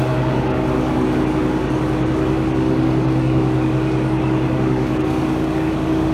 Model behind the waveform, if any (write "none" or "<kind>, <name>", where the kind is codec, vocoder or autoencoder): codec, DAC